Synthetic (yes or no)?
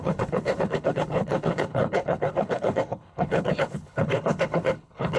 yes